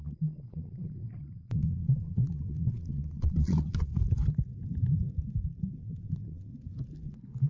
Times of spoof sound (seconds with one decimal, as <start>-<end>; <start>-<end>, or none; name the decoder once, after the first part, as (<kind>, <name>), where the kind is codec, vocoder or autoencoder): 0.0-3.9 (vocoder, Vocos); 5.8-6.5